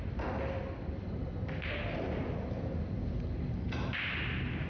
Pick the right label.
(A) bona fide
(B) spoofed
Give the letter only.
A